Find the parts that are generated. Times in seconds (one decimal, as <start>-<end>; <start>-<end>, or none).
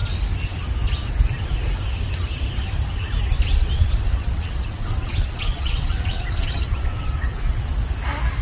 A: 3.5-7.7